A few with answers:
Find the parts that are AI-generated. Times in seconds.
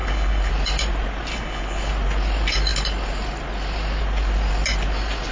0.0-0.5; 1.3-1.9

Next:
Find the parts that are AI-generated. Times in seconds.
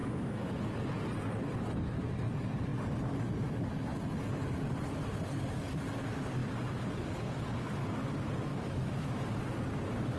0.0-0.6; 8.5-9.2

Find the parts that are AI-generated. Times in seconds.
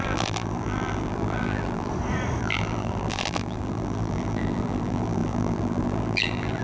0.0-1.9; 2.4-6.6